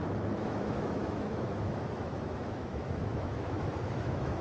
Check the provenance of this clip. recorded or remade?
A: remade